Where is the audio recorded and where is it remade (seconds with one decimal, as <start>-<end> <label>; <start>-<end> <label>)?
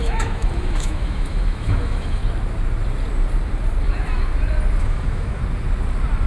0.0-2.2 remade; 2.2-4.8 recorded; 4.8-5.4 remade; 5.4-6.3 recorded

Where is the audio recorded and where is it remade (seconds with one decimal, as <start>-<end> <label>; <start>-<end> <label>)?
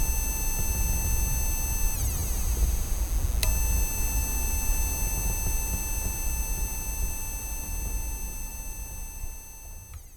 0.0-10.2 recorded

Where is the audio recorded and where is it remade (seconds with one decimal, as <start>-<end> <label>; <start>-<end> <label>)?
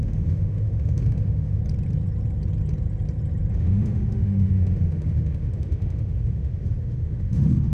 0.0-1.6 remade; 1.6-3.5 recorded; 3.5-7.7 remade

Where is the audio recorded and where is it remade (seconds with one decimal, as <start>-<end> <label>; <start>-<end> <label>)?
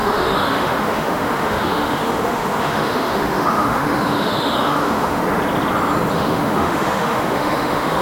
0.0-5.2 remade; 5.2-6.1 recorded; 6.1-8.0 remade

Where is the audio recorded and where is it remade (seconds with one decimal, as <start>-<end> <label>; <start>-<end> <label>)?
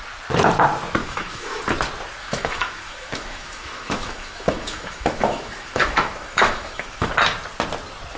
0.0-1.0 recorded; 1.0-1.6 remade; 1.6-2.2 recorded; 2.2-7.1 remade; 7.1-8.2 recorded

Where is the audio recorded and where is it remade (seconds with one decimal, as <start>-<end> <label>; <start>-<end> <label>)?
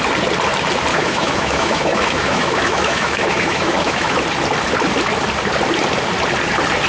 0.0-0.9 recorded; 0.9-4.2 remade; 4.2-6.9 recorded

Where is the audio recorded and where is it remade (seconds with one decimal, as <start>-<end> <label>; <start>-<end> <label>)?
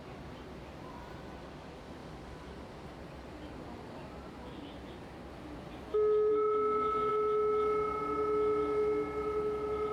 0.0-9.9 recorded